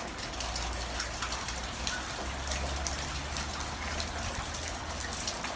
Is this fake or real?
real